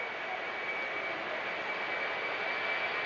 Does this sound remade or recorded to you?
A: recorded